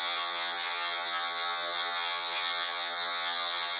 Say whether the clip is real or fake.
fake